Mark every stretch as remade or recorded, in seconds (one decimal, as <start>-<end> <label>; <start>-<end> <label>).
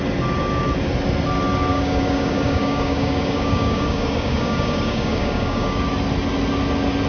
0.0-1.7 recorded; 1.7-5.8 remade; 5.8-7.1 recorded